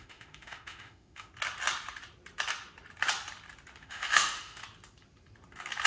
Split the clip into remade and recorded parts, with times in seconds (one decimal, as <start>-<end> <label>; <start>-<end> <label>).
0.0-1.3 remade; 1.3-3.8 recorded; 3.8-4.6 remade; 4.6-5.9 recorded